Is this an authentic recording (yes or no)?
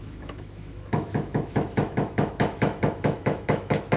no